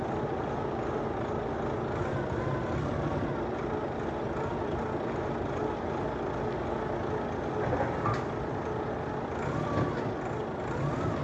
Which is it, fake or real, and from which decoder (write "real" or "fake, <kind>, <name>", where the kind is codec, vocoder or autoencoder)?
real